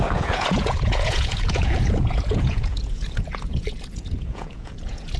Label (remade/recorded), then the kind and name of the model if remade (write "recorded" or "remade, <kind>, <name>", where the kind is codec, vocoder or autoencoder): remade, vocoder, Vocos